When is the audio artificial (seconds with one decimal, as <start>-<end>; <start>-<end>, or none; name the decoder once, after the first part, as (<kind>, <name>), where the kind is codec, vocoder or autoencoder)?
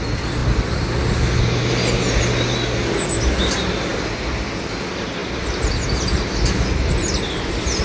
none